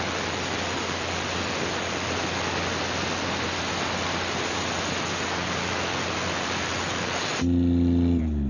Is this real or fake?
real